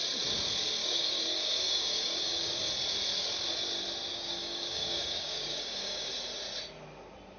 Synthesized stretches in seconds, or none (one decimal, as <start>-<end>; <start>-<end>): 0.8-2.6; 4.1-6.1